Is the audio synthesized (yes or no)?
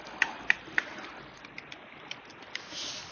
no